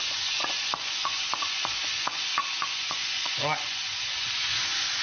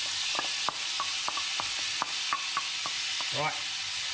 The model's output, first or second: first